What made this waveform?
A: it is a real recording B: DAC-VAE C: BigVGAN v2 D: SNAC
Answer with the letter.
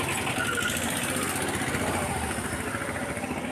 A